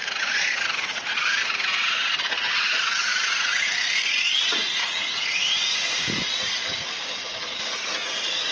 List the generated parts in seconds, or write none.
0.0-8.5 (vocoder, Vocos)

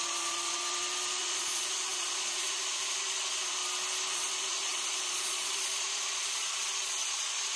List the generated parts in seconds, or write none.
0.0-0.6 (vocoder, Vocos); 1.2-3.6; 4.1-7.6

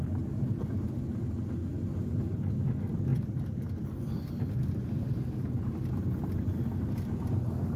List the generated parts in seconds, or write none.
none